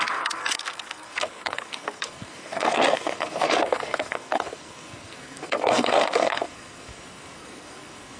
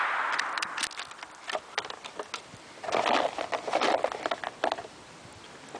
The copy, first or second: first